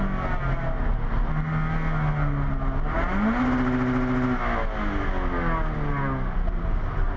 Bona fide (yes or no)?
yes